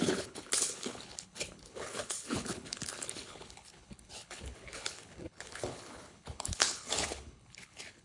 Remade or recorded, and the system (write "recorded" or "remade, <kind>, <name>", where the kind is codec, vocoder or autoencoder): remade, codec, HILCodec